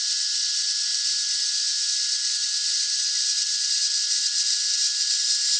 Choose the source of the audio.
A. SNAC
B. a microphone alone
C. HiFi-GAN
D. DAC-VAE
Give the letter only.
B